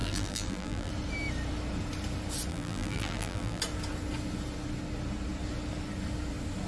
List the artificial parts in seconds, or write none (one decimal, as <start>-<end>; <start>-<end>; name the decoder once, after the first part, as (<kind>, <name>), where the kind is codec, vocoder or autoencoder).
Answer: 0.0-0.9 (vocoder, BigVGAN v2); 2.5-3.6